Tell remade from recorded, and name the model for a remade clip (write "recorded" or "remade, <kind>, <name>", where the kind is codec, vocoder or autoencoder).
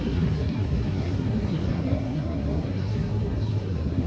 remade, codec, SNAC